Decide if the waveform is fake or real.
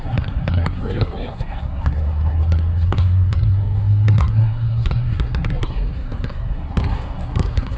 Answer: fake